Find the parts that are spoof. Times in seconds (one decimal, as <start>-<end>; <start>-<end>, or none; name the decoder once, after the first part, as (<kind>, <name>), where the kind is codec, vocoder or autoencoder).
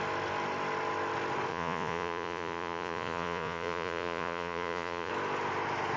1.5-5.1 (vocoder, Vocos)